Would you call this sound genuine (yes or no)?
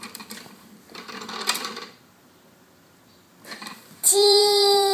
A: no